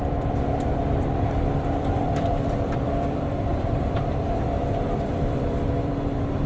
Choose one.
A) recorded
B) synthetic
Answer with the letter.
B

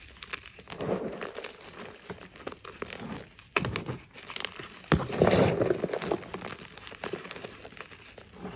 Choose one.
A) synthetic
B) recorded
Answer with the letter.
A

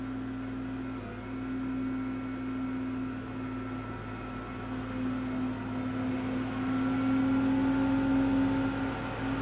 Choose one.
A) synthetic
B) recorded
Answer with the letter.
B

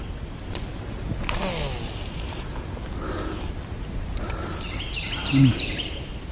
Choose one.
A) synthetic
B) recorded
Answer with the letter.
B